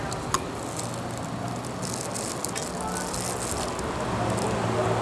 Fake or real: real